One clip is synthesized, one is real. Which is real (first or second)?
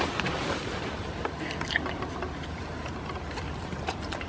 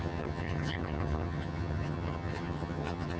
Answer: first